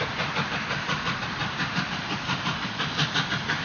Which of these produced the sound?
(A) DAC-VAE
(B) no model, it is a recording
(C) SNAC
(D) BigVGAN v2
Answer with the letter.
B